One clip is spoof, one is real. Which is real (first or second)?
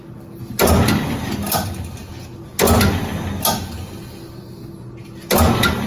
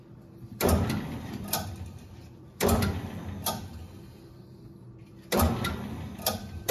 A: first